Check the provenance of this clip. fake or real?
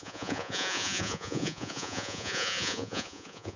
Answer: fake